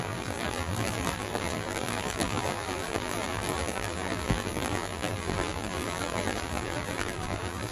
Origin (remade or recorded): remade